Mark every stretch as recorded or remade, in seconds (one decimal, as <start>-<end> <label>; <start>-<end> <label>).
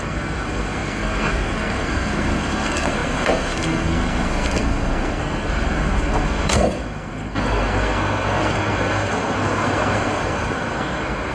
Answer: 0.0-11.3 remade